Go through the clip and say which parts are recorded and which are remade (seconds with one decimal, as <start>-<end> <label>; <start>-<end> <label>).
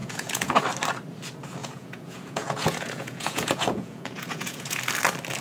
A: 0.0-0.6 remade; 0.6-1.6 recorded; 1.6-4.8 remade; 4.8-5.4 recorded